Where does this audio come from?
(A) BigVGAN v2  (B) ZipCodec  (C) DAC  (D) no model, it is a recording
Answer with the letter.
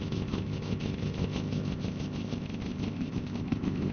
B